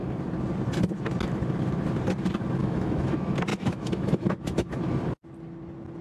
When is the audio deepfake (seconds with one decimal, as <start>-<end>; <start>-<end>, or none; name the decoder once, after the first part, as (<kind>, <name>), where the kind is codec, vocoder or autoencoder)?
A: 2.6-3.1 (autoencoder, DAC-VAE); 3.5-4.7